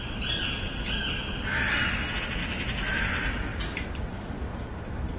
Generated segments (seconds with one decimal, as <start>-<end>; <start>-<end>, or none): 2.4-3.0